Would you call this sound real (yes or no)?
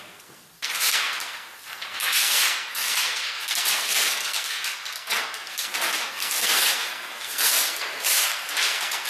no